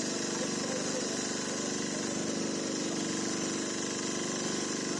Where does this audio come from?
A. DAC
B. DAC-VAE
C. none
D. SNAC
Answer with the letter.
C